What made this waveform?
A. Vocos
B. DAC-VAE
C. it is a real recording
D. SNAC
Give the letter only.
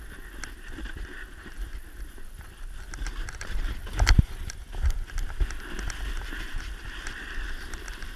C